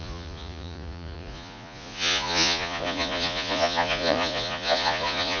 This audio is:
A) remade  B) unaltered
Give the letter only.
A